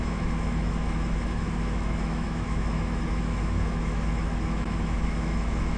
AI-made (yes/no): yes